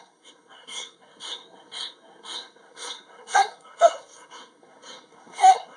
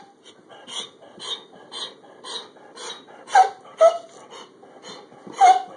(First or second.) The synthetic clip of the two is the first